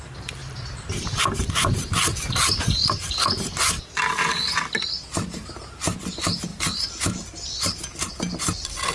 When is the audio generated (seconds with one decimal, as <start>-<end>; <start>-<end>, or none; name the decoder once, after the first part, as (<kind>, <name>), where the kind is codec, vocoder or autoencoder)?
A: 0.4-4.6 (vocoder, BigVGAN v2); 6.5-7.2